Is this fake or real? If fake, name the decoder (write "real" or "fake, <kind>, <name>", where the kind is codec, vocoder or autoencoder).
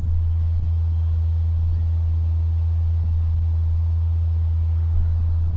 real